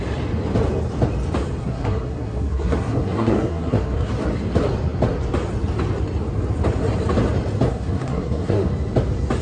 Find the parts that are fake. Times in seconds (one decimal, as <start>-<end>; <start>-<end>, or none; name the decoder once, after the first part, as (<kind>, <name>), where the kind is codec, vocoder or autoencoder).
1.6-4.1 (codec, SNAC); 7.7-8.7

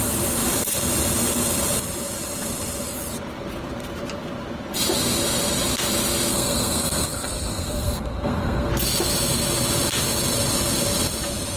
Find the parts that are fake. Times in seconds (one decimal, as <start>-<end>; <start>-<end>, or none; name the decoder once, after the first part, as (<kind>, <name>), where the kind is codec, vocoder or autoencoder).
6.3-8.7 (codec, SNAC)

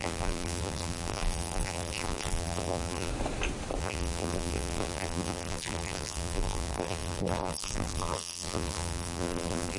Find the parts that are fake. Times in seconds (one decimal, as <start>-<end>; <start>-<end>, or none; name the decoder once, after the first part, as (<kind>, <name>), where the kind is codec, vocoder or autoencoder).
0.0-3.1 (vocoder, BigVGAN v2); 3.8-9.8

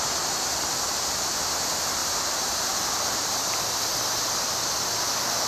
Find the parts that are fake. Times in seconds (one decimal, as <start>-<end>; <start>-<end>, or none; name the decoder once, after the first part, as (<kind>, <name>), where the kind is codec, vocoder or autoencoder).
none